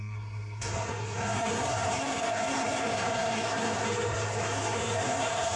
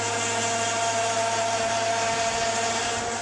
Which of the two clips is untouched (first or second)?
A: second